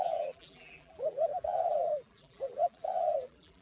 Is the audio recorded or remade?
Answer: remade